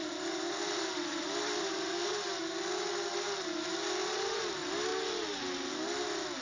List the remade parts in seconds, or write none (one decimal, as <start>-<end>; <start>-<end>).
0.0-2.4; 4.0-4.5